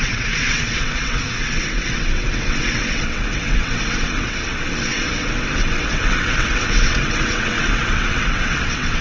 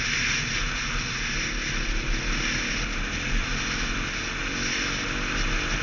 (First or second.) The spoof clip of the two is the first